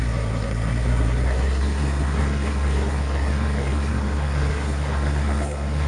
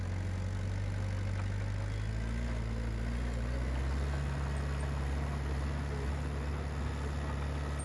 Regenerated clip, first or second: first